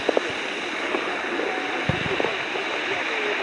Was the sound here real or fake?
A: real